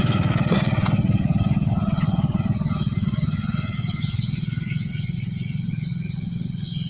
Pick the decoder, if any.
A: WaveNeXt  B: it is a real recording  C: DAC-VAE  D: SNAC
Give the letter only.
A